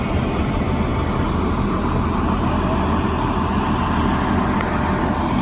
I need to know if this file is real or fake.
real